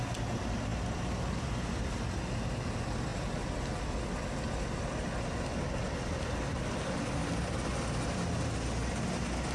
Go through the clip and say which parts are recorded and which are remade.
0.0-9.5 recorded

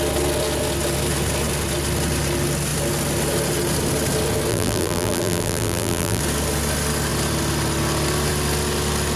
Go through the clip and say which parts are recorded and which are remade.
0.0-4.5 recorded; 4.5-6.2 remade; 6.2-9.2 recorded